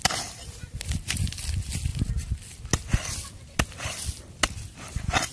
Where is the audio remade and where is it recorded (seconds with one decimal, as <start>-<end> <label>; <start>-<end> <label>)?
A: 0.0-5.3 recorded

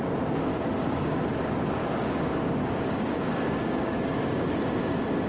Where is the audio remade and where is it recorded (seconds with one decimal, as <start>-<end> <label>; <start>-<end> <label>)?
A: 0.0-0.5 recorded; 0.5-1.2 remade; 1.2-1.8 recorded; 1.8-4.5 remade; 4.5-5.3 recorded

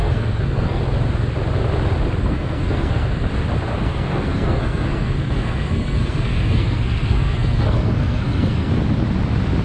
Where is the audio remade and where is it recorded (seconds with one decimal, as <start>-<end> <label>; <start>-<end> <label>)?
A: 0.0-0.8 remade; 0.8-2.2 recorded; 2.2-3.3 remade; 3.3-3.7 recorded; 3.7-8.7 remade; 8.7-9.6 recorded

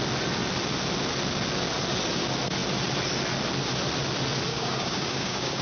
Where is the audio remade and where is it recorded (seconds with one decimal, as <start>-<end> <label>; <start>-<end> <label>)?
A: 0.0-4.5 recorded; 4.5-5.6 remade

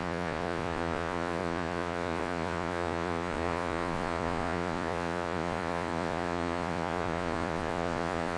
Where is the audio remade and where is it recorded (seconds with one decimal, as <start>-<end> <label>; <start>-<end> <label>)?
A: 0.0-8.4 remade

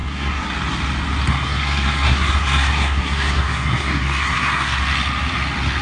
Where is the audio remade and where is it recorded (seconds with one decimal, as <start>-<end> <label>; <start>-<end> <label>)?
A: 0.0-0.5 remade; 0.5-1.3 recorded; 1.3-4.8 remade; 4.8-5.8 recorded